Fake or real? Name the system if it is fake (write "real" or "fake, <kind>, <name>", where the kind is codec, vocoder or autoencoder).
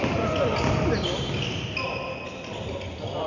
real